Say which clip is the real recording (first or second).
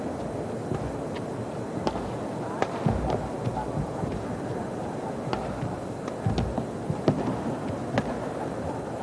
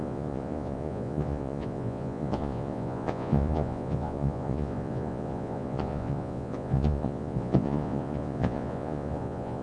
first